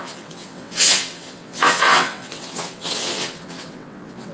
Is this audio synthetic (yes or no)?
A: yes